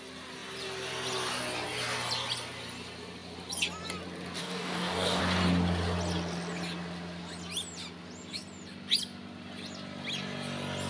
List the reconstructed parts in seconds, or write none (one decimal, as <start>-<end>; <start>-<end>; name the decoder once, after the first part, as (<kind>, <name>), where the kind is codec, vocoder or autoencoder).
4.4-5.2 (codec, DAC)